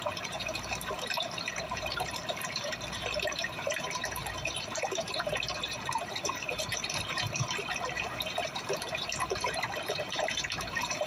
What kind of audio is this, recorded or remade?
remade